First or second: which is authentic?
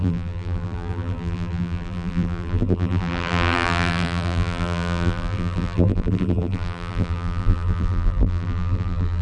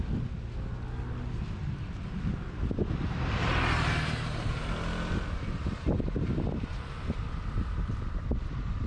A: second